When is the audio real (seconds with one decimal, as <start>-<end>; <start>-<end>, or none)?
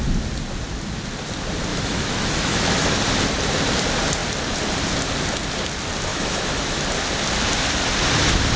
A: 0.0-1.7; 3.0-6.1; 6.8-8.6